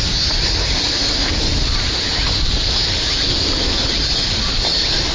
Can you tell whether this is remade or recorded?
recorded